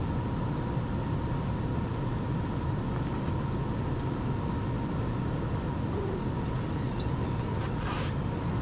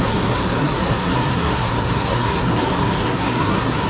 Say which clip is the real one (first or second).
first